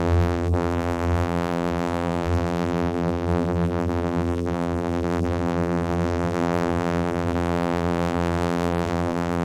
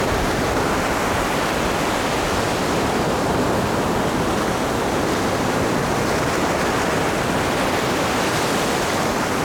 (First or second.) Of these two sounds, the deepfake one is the first